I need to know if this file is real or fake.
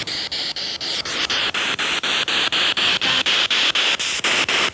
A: real